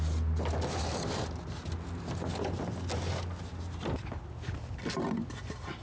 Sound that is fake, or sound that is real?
real